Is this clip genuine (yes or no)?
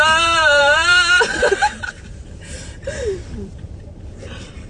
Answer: no